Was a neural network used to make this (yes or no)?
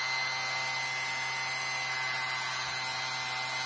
no